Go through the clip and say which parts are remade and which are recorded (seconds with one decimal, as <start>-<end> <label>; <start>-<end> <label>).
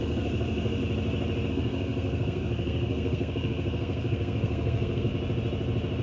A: 0.0-0.8 remade; 0.8-1.5 recorded; 1.5-5.1 remade; 5.1-6.0 recorded